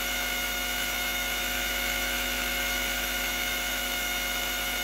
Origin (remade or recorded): remade